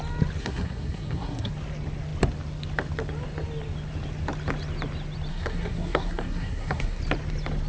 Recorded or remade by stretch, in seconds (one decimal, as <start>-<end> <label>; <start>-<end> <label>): 0.0-0.4 recorded; 0.4-1.5 remade; 1.5-5.3 recorded; 5.3-7.0 remade; 7.0-7.7 recorded